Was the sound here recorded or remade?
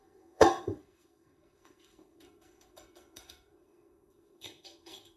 remade